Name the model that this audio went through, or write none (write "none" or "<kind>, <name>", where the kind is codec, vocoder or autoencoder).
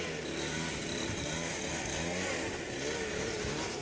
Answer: none